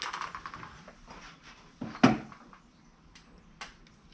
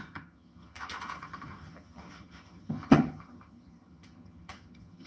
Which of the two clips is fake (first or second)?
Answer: second